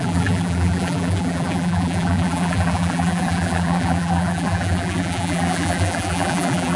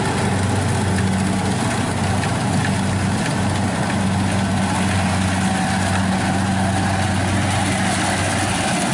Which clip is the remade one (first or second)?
first